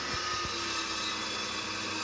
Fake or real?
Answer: real